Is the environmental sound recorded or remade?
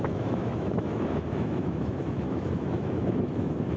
remade